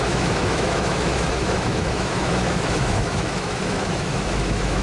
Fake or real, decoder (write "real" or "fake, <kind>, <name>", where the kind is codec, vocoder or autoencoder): fake, autoencoder, DAC-VAE